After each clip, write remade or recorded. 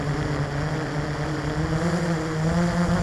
recorded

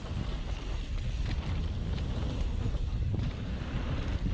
recorded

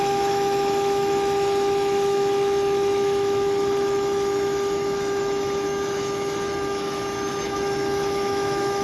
remade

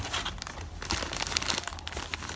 recorded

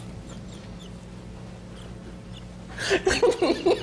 recorded